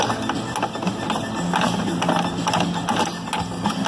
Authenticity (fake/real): real